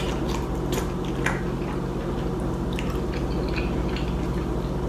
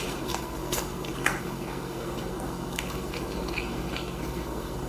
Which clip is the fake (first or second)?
second